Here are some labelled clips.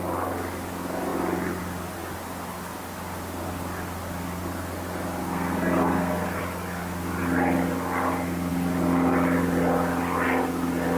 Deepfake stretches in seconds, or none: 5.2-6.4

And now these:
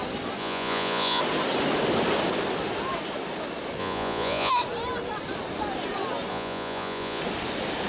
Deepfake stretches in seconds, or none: 0.4-1.2; 3.8-4.5; 6.3-7.2

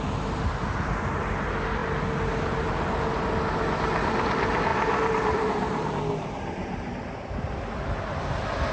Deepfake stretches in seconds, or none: 4.7-6.9

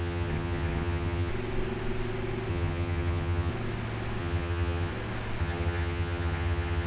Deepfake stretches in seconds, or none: 0.0-1.3; 2.5-3.5; 4.2-4.9; 5.4-6.9

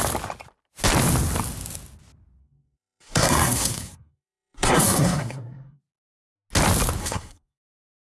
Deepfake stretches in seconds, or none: 2.4-5.8; 7.0-7.7

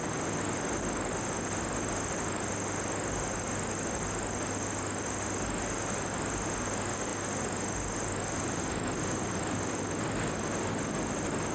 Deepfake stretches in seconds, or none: none